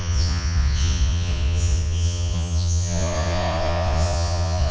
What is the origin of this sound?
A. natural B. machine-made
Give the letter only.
B